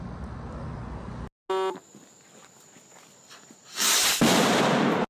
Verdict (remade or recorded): recorded